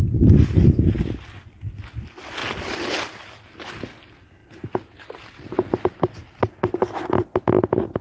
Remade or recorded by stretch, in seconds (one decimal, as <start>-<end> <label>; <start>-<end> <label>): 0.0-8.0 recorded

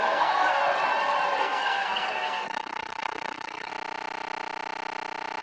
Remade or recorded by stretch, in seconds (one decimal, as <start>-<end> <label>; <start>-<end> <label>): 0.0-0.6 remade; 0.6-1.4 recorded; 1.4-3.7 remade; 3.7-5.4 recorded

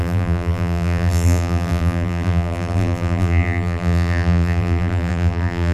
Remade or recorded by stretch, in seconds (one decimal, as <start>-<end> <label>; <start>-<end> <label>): 0.0-5.7 remade

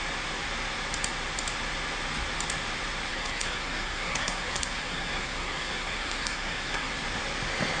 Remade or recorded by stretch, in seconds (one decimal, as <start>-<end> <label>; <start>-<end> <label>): 0.0-3.1 recorded; 3.1-6.9 remade; 6.9-7.8 recorded

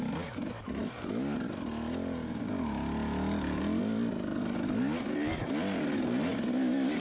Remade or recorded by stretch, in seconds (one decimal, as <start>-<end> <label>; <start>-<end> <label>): 0.0-7.0 recorded

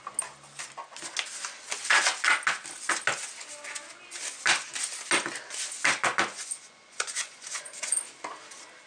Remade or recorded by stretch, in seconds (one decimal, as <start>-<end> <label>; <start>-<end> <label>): 0.0-6.3 recorded; 6.3-8.0 remade; 8.0-8.9 recorded